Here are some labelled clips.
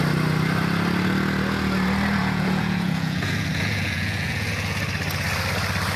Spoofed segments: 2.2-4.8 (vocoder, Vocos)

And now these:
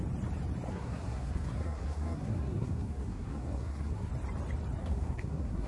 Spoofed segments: 0.7-4.1 (codec, SNAC); 4.8-5.7

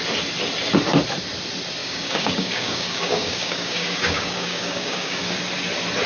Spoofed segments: 1.8-5.2 (codec, DAC)

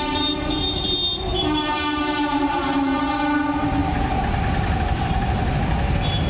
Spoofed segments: 1.3-3.0 (vocoder, BigVGAN v2)

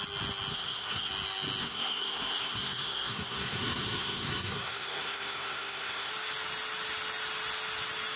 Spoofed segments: 0.5-1.1 (codec, SNAC); 1.6-6.1

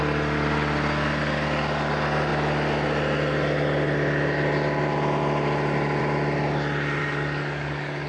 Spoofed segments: 7.0-8.1 (codec, DAC)

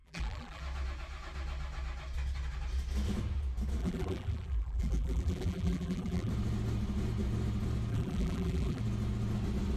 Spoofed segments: 0.0-0.6 (vocoder, BigVGAN v2); 3.8-6.3; 7.9-8.8